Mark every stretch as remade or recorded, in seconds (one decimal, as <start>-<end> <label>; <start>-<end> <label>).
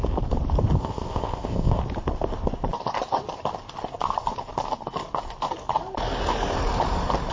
0.0-0.8 recorded; 0.8-1.8 remade; 1.8-7.3 recorded